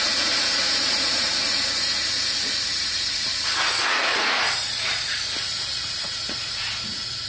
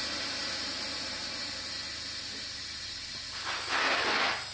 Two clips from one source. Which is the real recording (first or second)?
second